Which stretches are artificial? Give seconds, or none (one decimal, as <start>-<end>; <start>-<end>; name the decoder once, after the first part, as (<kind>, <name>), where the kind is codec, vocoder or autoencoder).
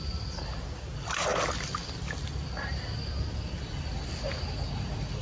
none